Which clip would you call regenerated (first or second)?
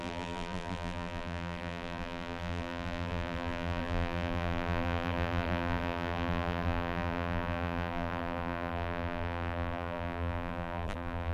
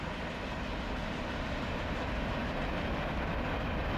first